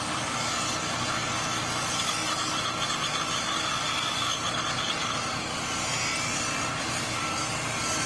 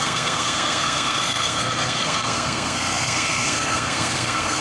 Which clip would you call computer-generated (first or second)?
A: second